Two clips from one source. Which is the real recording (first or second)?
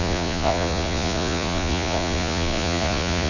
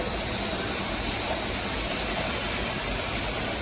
second